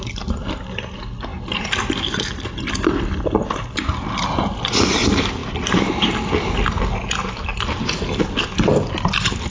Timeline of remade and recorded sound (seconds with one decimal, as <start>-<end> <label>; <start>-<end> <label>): 0.0-1.3 remade; 1.3-3.8 recorded; 3.8-5.4 remade; 5.4-8.5 recorded; 8.5-9.5 remade